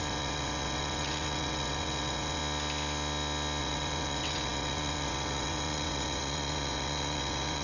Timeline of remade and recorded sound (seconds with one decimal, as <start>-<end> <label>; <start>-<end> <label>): 0.0-2.4 remade; 2.4-3.6 recorded; 3.6-7.6 remade